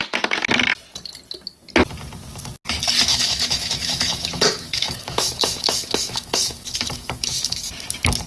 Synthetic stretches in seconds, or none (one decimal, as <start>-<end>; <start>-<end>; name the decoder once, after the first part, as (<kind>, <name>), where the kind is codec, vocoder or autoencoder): 3.1-7.7 (autoencoder, DAC-VAE)